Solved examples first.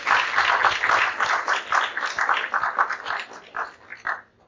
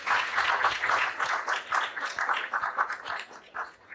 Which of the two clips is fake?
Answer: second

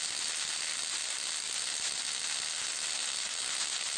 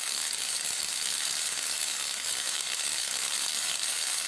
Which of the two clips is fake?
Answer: second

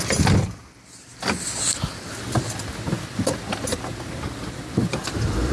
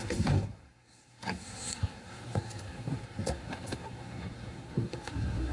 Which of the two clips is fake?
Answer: second